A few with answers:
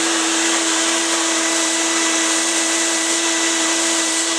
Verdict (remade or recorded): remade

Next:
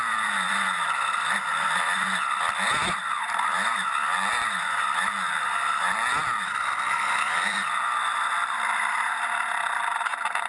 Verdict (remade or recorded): remade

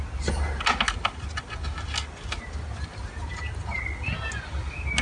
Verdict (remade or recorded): recorded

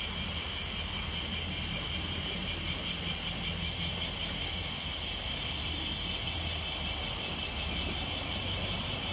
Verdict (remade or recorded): recorded